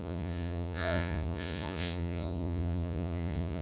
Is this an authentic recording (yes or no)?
no